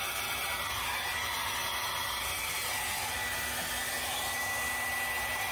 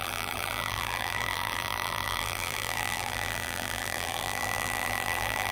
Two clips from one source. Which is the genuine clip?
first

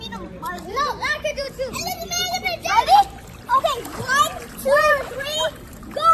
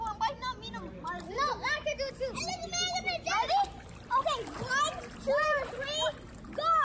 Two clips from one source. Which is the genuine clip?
second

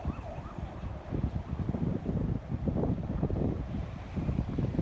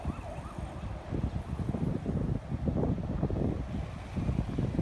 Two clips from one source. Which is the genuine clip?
second